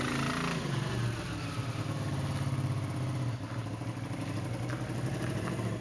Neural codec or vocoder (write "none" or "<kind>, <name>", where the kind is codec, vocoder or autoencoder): none